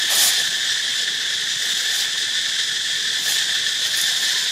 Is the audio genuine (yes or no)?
yes